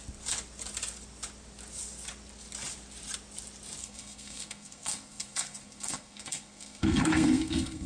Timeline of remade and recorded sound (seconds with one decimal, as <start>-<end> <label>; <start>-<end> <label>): 0.0-3.8 recorded; 3.8-7.9 remade